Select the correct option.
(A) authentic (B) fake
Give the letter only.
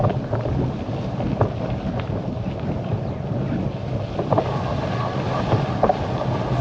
A